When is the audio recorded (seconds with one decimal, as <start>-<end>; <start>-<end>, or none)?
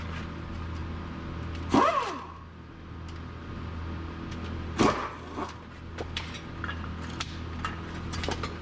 0.0-8.6